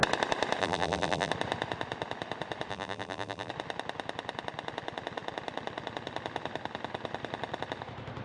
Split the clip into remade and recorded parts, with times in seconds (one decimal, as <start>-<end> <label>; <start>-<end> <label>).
0.0-0.6 recorded; 0.6-1.3 remade; 1.3-2.7 recorded; 2.7-3.5 remade; 3.5-8.2 recorded